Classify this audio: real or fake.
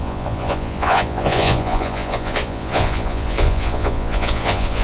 fake